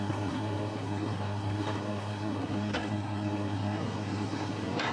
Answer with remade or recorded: remade